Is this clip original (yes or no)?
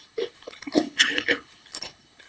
no